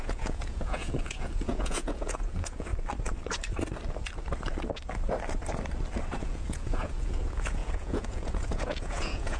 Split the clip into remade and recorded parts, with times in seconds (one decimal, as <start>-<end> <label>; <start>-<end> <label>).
0.0-2.7 remade; 2.7-6.2 recorded; 6.2-9.4 remade